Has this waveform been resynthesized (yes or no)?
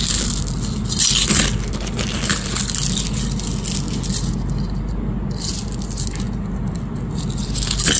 no